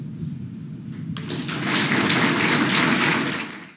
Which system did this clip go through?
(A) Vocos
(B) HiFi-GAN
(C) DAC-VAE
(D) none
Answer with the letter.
D